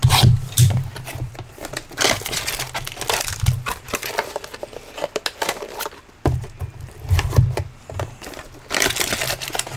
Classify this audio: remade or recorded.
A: recorded